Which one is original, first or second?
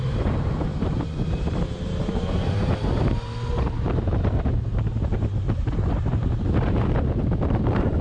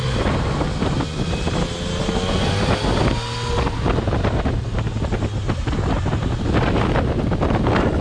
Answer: second